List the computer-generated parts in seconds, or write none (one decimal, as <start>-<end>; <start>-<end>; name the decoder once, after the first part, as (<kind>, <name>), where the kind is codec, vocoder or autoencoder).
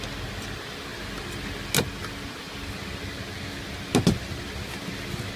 none